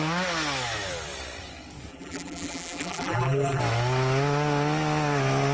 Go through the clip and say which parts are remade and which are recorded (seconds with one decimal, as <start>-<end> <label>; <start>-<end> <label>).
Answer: 0.0-1.9 recorded; 1.9-3.6 remade; 3.6-5.5 recorded